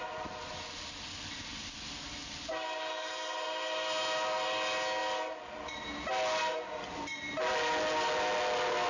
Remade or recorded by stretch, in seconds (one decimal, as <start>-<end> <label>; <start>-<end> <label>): 0.0-8.9 recorded